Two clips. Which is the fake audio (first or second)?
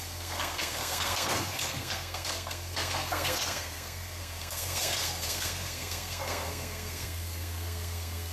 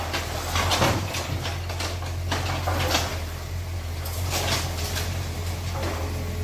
first